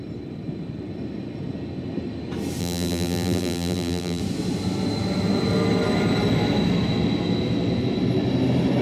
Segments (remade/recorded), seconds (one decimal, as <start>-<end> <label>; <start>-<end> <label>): 0.0-2.6 recorded; 2.6-4.2 remade; 4.2-8.8 recorded